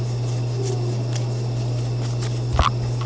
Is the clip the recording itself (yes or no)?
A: yes